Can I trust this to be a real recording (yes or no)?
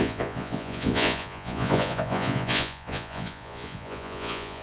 no